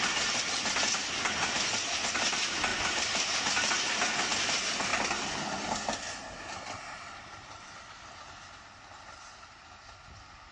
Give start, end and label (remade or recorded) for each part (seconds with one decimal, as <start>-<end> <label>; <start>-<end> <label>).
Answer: 0.0-2.7 recorded; 2.7-3.7 remade; 3.7-10.5 recorded